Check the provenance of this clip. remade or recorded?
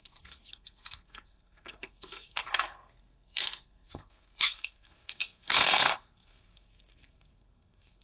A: remade